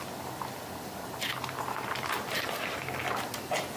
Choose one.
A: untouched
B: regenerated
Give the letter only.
A